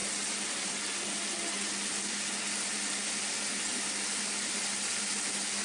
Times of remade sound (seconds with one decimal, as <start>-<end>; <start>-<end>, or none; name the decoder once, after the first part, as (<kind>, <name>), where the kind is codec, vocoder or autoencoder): none